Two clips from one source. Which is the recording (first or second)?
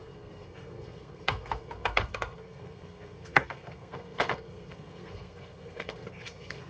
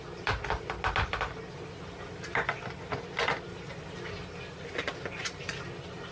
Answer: second